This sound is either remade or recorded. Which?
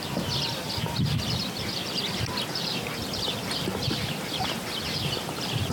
remade